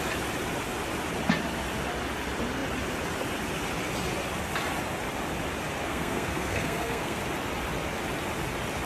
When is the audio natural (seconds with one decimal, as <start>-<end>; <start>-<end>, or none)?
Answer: 0.0-5.8; 7.2-8.9